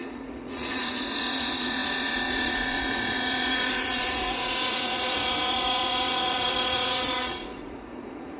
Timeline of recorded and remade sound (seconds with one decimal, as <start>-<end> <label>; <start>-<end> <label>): 0.0-8.4 remade